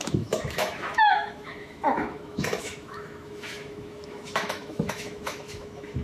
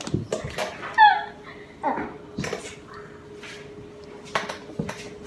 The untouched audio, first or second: second